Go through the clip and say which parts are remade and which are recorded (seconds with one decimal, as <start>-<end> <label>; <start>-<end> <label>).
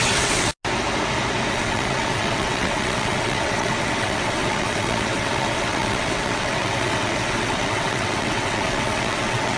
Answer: 0.0-0.5 remade; 0.5-1.5 recorded; 1.5-9.6 remade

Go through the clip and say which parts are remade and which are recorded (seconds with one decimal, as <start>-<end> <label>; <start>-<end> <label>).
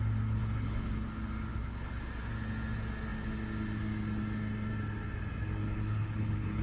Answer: 0.0-0.4 recorded; 0.4-0.9 remade; 0.9-1.5 recorded; 1.5-2.1 remade; 2.1-5.6 recorded; 5.6-6.6 remade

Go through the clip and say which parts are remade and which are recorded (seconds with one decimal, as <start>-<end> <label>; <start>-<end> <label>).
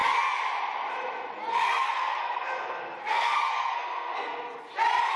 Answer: 0.0-1.5 recorded; 1.5-4.6 remade; 4.6-5.2 recorded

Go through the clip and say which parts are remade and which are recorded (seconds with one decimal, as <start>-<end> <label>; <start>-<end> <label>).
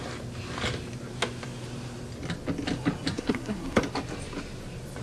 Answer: 0.0-3.1 recorded; 3.1-3.8 remade; 3.8-5.0 recorded